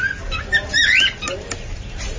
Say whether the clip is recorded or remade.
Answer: recorded